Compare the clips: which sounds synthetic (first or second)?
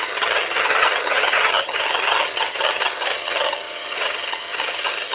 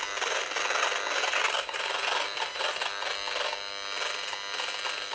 first